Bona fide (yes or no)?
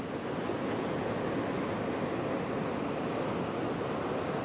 yes